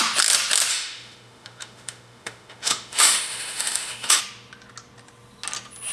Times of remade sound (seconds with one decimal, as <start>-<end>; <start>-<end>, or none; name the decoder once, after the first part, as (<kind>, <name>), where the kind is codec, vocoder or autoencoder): 0.7-4.2 (autoencoder, DAC-VAE)